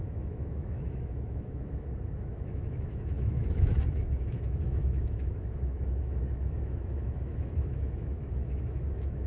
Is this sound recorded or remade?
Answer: remade